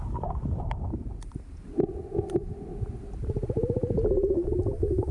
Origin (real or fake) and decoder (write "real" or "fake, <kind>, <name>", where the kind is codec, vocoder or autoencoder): real